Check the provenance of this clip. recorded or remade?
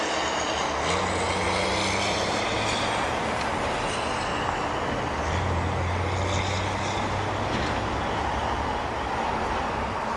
recorded